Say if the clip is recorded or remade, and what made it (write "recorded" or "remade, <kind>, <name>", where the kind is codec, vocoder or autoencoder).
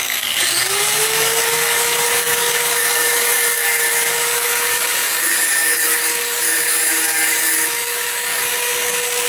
remade, codec, DAC